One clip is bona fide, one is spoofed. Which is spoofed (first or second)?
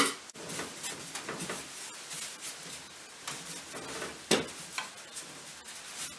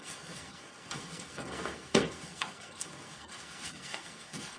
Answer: second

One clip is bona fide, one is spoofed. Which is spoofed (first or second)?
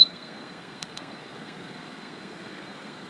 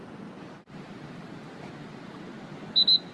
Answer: first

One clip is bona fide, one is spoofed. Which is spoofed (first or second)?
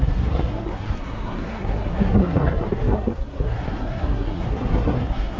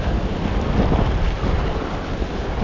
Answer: first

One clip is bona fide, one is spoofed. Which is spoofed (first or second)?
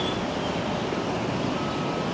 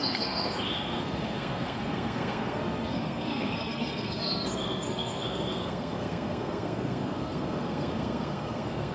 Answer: second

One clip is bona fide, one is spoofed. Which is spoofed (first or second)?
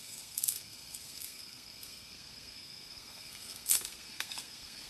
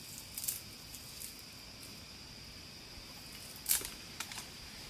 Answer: first